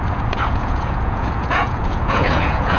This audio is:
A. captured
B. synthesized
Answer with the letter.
B